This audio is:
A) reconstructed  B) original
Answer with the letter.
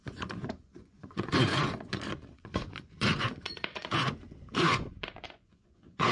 A